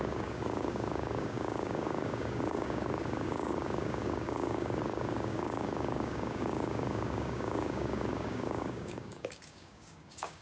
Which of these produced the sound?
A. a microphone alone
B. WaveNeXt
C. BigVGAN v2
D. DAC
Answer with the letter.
D